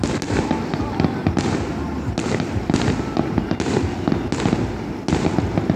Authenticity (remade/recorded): recorded